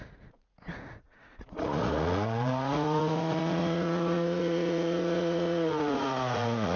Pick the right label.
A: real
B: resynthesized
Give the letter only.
B